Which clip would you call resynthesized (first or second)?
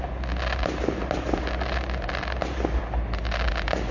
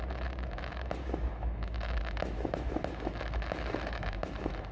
second